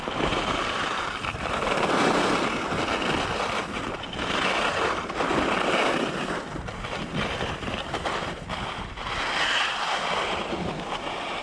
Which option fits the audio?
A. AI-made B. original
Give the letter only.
B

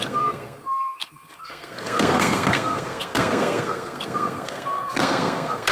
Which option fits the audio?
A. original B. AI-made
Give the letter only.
B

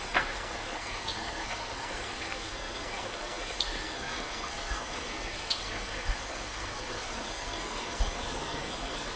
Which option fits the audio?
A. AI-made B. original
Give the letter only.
A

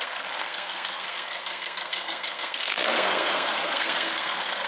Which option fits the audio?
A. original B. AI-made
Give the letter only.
B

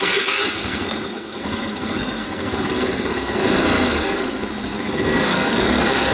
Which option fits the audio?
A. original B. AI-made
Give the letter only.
B